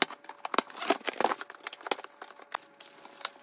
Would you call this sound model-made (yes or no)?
no